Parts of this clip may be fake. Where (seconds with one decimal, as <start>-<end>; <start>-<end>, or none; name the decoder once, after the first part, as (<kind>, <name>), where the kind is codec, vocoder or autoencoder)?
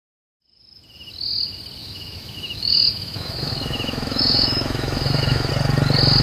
1.8-5.5 (autoencoder, DAC-VAE)